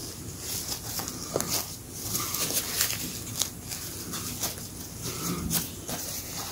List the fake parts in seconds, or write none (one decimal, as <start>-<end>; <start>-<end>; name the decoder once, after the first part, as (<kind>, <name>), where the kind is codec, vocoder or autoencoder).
none